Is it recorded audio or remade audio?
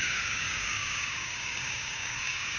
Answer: remade